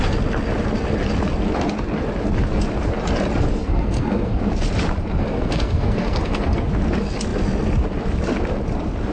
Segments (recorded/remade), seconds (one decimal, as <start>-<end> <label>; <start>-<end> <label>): 0.0-3.6 recorded; 3.6-4.4 remade; 4.4-5.2 recorded; 5.2-6.7 remade; 6.7-9.1 recorded